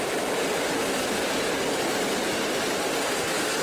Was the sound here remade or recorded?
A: recorded